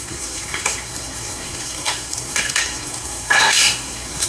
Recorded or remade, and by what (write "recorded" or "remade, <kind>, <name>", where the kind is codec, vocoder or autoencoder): remade, codec, SNAC